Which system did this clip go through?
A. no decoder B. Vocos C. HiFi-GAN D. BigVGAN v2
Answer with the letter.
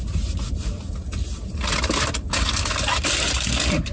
A